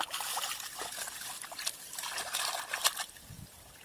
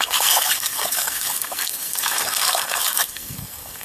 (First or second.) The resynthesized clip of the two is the second